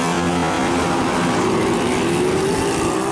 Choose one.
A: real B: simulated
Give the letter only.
A